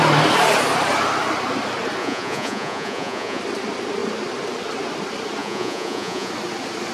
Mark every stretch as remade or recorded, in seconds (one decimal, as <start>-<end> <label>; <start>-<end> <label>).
0.0-2.0 recorded; 2.0-3.4 remade; 3.4-5.4 recorded; 5.4-6.3 remade; 6.3-6.9 recorded

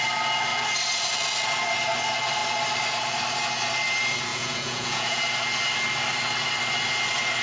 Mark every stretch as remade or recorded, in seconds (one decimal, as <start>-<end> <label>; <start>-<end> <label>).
0.0-4.3 recorded; 4.3-5.2 remade; 5.2-7.4 recorded

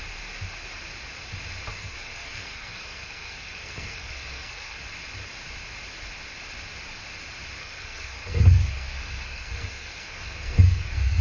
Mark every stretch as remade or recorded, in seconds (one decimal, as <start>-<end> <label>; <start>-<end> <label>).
0.0-1.7 recorded; 1.7-4.8 remade; 4.8-7.6 recorded; 7.6-11.2 remade

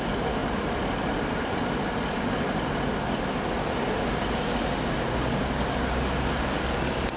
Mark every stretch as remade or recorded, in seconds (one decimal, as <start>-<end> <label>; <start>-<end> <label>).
0.0-7.2 recorded

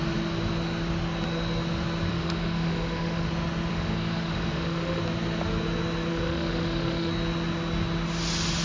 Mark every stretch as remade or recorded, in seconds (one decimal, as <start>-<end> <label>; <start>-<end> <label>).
0.0-2.1 recorded; 2.1-3.3 remade; 3.3-3.7 recorded; 3.7-5.0 remade; 5.0-6.1 recorded; 6.1-7.1 remade; 7.1-8.6 recorded